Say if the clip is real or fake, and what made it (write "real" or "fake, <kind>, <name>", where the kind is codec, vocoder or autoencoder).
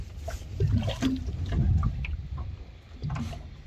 real